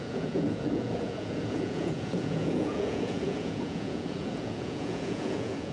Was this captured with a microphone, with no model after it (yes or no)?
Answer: no